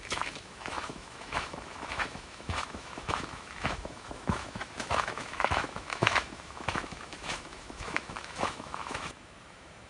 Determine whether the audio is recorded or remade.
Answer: remade